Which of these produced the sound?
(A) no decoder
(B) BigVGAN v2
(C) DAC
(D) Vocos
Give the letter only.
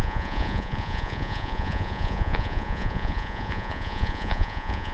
D